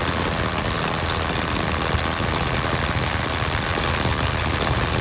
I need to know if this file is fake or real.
real